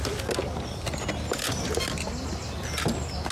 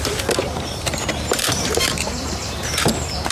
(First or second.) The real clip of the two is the first